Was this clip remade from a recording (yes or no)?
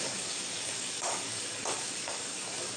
yes